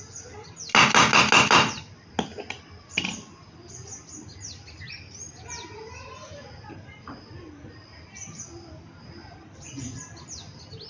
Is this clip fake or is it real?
real